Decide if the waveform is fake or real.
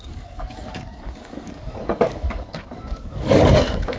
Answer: fake